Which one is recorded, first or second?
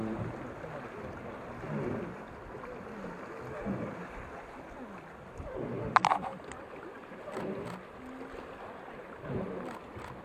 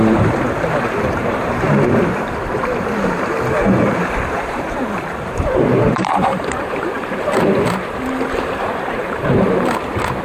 first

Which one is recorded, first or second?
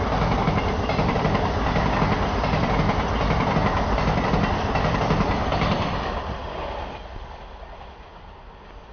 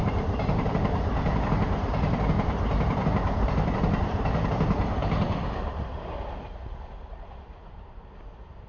first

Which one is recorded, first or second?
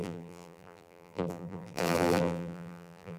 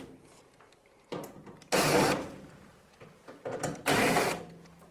second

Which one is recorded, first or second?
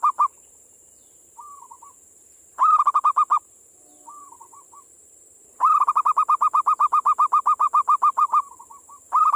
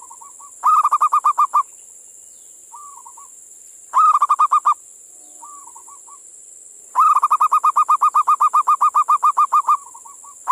second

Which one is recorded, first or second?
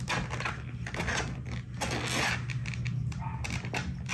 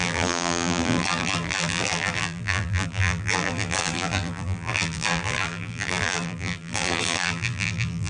first